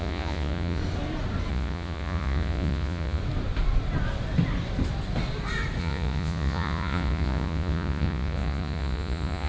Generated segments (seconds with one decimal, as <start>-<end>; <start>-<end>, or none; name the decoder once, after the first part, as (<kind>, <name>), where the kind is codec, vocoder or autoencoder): 0.0-0.8 (vocoder, Vocos); 1.5-3.2; 5.8-9.5